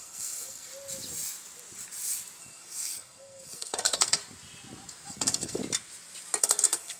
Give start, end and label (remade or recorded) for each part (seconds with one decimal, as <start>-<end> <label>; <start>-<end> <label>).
0.0-0.7 remade; 0.7-2.4 recorded; 2.4-4.2 remade; 4.2-5.1 recorded; 5.1-5.6 remade; 5.6-6.4 recorded; 6.4-7.0 remade